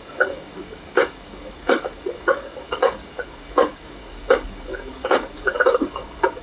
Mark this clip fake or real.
fake